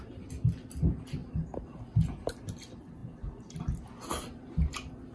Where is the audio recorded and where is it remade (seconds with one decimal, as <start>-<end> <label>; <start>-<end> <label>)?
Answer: 0.0-5.1 recorded

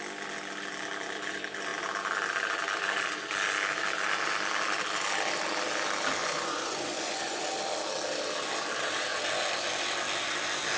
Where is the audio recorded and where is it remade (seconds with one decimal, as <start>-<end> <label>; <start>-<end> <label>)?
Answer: 0.0-6.2 recorded; 6.2-7.4 remade; 7.4-10.8 recorded

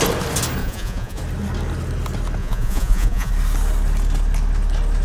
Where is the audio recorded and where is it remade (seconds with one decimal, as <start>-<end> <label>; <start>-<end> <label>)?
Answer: 0.0-0.6 recorded; 0.6-1.2 remade; 1.2-2.4 recorded; 2.4-3.3 remade; 3.3-5.0 recorded